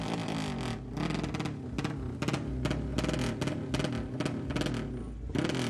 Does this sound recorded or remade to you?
recorded